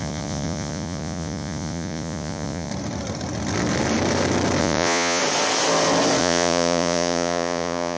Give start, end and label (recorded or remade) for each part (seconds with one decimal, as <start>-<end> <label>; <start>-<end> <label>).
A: 0.0-2.7 remade; 2.7-4.6 recorded; 4.6-5.2 remade; 5.2-6.2 recorded; 6.2-8.0 remade